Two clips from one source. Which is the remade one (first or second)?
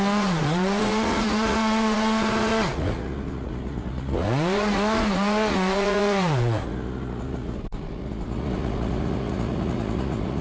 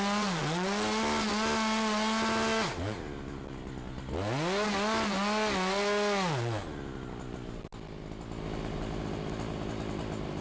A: first